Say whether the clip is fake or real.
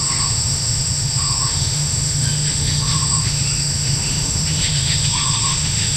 fake